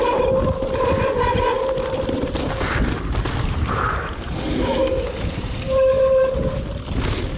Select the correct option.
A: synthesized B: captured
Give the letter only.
B